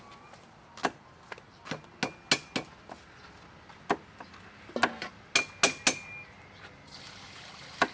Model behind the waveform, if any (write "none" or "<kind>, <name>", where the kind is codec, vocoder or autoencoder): none